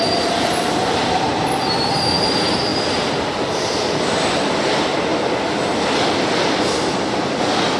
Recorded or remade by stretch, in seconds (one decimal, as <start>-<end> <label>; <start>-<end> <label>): 0.0-7.8 recorded